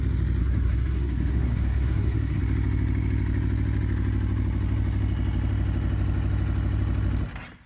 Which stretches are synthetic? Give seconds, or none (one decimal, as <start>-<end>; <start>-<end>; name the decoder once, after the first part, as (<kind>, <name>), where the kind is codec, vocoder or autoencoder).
0.4-2.4 (codec, SNAC)